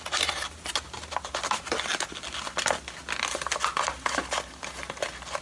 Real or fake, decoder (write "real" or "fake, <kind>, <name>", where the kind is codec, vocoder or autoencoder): real